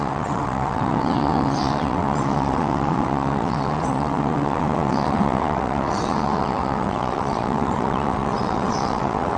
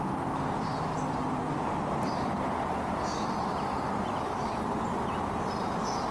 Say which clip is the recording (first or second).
second